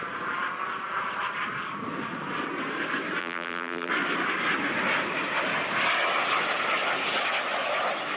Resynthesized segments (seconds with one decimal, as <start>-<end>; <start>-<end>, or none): 3.2-3.9